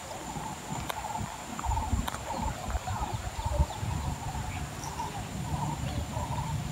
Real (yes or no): yes